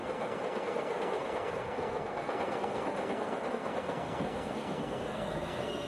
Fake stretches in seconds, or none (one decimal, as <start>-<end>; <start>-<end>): 0.0-5.9